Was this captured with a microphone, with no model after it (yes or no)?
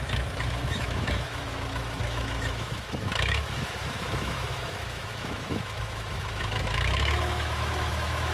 no